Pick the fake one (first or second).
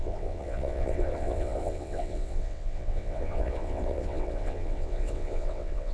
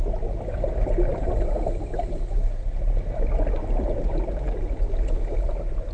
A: first